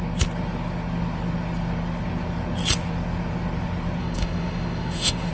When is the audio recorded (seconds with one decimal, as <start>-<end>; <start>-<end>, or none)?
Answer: 0.0-4.0